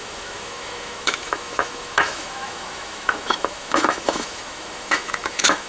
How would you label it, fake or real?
fake